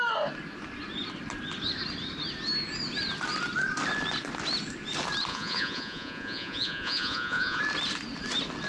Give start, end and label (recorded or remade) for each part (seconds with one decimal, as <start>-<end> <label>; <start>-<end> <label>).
0.0-5.3 recorded; 5.3-7.6 remade; 7.6-8.7 recorded